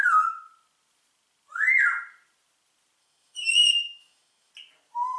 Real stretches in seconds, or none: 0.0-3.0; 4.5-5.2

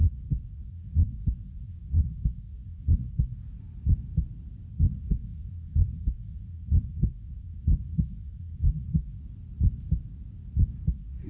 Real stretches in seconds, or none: 3.6-4.7; 9.2-10.9

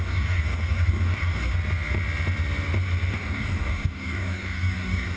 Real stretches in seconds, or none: 1.5-3.1

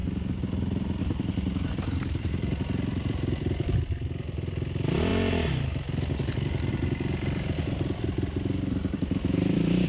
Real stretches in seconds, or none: 0.0-1.0; 5.1-6.7

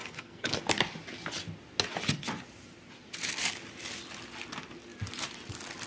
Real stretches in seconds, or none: 0.6-5.9

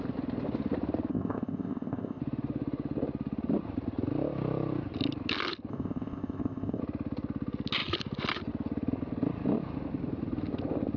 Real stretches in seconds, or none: 0.0-1.1; 2.2-5.7; 6.8-11.0